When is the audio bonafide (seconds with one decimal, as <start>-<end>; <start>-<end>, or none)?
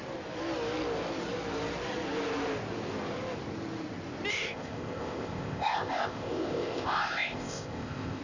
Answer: 0.0-4.3